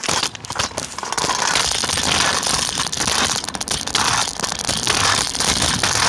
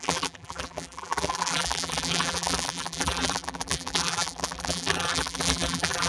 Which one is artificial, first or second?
second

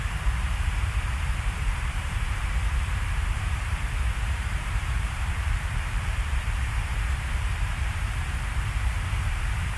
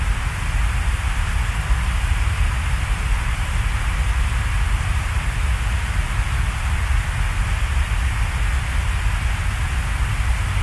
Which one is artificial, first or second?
first